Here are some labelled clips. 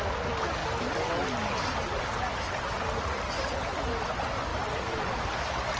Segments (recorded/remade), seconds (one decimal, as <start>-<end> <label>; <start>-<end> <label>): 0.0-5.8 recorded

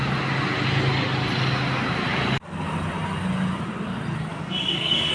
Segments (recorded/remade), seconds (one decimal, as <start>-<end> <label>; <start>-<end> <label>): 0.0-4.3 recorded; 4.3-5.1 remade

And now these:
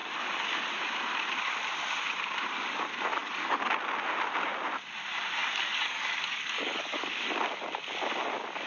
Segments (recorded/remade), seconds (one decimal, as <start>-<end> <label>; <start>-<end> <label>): 0.0-3.2 recorded; 3.2-3.7 remade; 3.7-5.4 recorded; 5.4-7.2 remade; 7.2-8.7 recorded

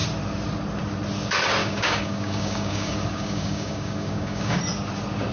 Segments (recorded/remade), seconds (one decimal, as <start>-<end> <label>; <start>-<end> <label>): 0.0-1.6 recorded; 1.6-4.6 remade; 4.6-5.3 recorded